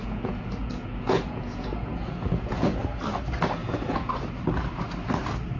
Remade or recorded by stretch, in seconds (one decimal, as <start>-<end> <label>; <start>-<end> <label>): 0.0-2.8 remade; 2.8-3.6 recorded; 3.6-4.1 remade; 4.1-5.6 recorded